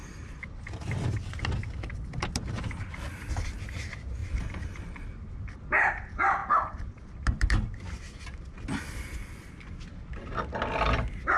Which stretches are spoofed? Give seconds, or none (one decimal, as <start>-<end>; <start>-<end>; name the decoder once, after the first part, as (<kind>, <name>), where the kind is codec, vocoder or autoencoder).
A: 0.0-1.4 (vocoder, BigVGAN v2); 6.4-9.5